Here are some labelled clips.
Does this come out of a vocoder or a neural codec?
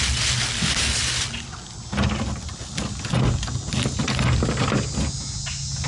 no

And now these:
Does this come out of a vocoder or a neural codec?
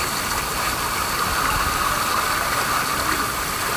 no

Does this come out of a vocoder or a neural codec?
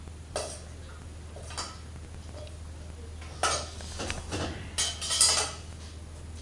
no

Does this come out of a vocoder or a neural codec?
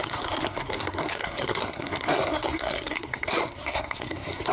yes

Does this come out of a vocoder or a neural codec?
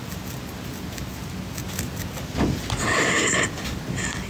no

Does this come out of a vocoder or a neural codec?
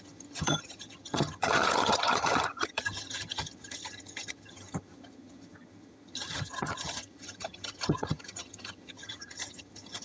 yes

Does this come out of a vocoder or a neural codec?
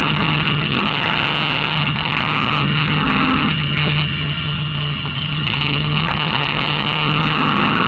yes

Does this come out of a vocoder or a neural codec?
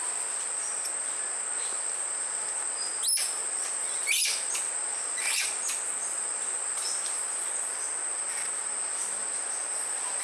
no